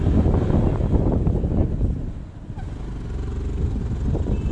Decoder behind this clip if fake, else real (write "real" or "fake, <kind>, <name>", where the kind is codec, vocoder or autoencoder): real